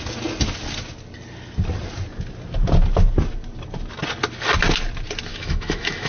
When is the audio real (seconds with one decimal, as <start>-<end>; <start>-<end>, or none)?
0.0-5.3